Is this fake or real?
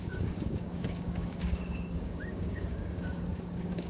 fake